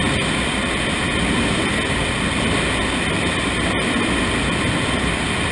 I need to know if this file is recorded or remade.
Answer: recorded